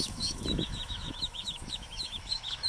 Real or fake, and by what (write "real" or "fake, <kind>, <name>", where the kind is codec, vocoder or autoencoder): fake, autoencoder, DAC-VAE